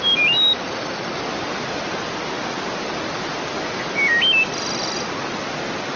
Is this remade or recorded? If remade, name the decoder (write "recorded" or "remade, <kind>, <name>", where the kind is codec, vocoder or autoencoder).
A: recorded